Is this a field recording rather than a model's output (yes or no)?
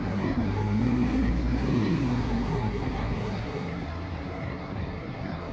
no